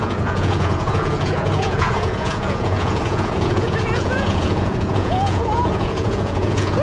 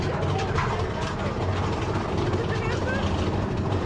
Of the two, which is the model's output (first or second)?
first